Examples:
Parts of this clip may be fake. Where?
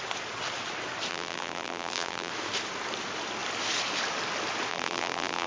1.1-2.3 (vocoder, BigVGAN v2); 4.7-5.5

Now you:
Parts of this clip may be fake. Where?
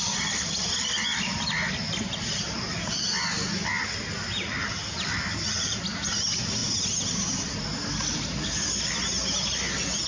none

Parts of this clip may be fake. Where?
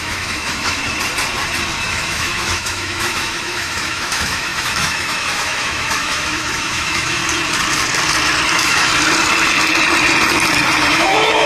0.0-0.8 (autoencoder, DAC-VAE); 1.9-7.2; 8.5-8.9; 10.9-11.5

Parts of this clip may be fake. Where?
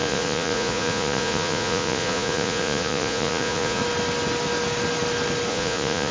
0.0-3.8 (vocoder, Vocos); 5.5-6.1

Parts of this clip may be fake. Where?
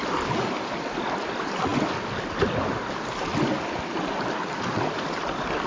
none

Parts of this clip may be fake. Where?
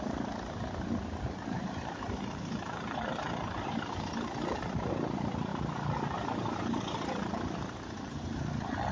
0.0-5.5 (vocoder, BigVGAN v2); 7.3-8.9